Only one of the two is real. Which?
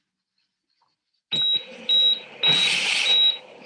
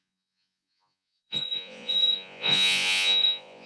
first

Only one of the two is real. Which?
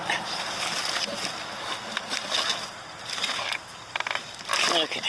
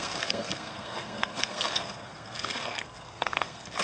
first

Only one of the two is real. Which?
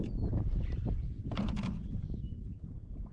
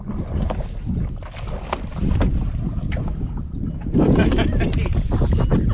second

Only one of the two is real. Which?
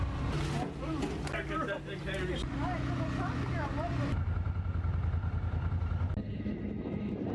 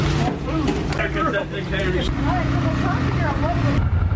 first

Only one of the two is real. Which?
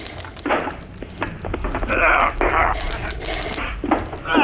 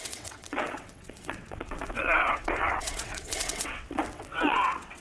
first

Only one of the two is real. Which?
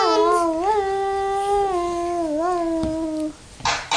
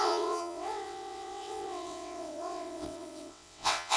first